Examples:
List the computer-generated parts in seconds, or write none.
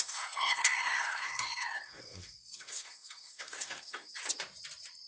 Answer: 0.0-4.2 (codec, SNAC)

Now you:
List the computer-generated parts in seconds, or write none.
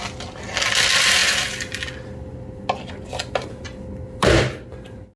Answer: none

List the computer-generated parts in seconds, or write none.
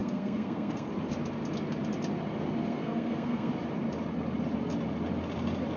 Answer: 0.0-0.9 (codec, SNAC); 2.7-3.5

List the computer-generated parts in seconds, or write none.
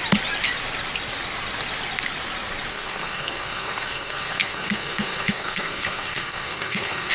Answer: 2.7-7.1 (codec, SNAC)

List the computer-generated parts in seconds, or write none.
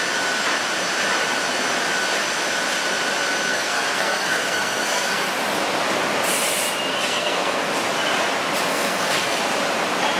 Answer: 3.5-5.3 (codec, SNAC); 6.9-7.7; 8.7-9.4